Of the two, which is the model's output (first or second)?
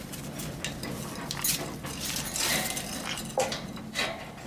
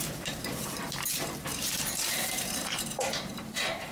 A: second